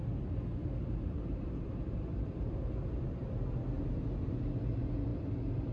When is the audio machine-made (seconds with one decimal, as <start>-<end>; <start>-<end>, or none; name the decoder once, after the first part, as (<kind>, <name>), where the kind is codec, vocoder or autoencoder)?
0.6-2.7 (vocoder, BigVGAN v2)